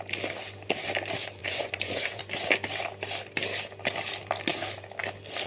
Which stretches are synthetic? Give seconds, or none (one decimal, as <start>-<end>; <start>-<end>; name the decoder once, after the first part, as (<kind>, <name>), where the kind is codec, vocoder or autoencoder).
1.4-2.2 (vocoder, Vocos)